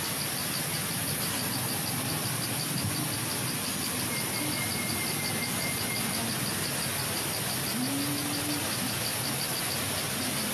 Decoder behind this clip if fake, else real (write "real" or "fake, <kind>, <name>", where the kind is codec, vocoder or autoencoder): real